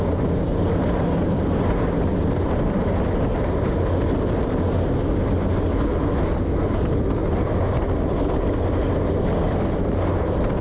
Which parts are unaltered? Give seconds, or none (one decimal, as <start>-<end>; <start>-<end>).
0.0-10.6